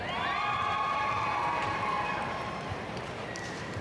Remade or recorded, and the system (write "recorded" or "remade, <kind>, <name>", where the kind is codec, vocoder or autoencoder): remade, vocoder, BigVGAN v2